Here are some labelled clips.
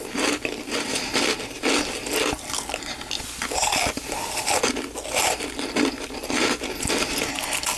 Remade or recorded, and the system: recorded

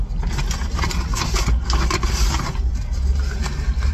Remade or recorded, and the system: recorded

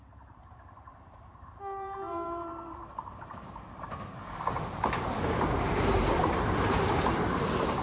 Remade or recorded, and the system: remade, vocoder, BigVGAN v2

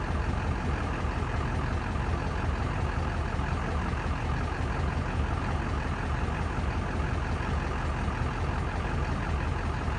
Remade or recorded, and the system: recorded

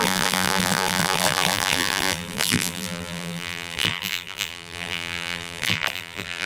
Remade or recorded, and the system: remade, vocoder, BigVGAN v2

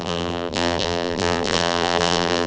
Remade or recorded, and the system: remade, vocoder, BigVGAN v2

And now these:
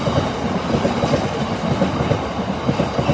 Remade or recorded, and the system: recorded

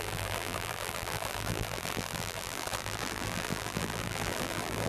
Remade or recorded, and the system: remade, vocoder, BigVGAN v2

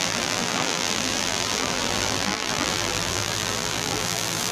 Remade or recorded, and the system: remade, vocoder, BigVGAN v2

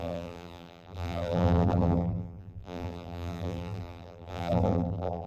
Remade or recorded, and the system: remade, vocoder, BigVGAN v2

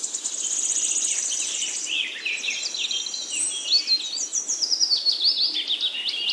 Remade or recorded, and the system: recorded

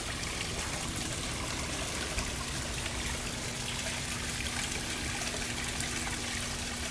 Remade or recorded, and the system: recorded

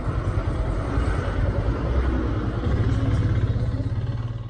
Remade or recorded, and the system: recorded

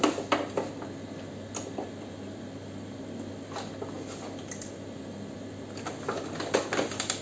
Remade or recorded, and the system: recorded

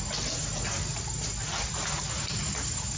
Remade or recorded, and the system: remade, vocoder, BigVGAN v2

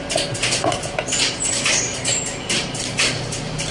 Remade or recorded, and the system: remade, vocoder, BigVGAN v2